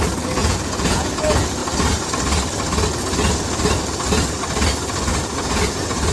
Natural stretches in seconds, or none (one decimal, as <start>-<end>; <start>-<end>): 0.0-0.4; 1.1-5.1